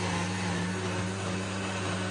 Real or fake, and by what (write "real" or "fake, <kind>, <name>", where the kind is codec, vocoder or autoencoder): real